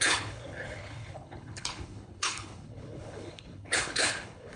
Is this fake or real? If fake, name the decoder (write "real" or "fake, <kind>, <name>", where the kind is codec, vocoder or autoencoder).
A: fake, codec, HILCodec